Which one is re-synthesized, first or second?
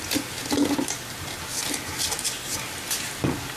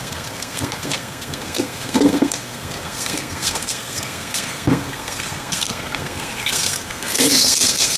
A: second